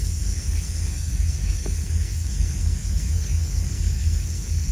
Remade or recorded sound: remade